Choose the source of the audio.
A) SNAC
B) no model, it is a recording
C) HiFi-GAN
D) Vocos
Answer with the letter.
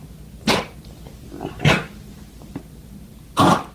B